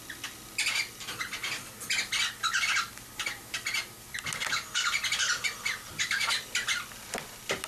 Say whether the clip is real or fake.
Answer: real